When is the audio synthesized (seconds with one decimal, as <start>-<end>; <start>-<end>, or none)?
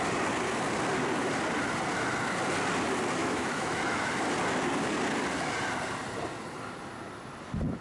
3.2-4.1